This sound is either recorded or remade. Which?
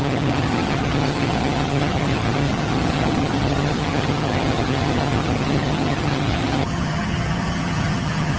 remade